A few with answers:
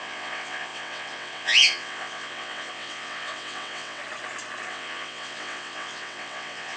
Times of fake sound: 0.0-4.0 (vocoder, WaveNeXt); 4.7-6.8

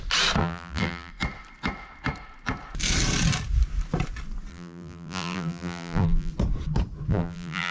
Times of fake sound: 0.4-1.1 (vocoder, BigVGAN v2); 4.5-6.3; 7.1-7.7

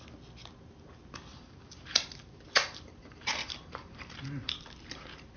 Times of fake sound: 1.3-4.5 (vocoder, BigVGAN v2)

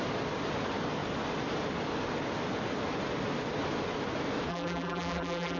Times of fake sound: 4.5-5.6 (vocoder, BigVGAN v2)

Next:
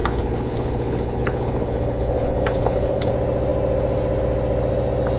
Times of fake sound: 0.0-3.1 (codec, HILCodec)

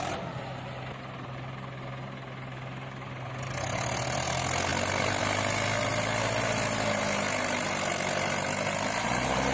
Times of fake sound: none

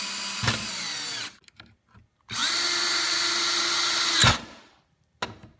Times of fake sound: none